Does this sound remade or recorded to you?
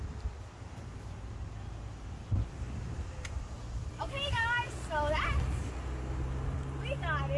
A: recorded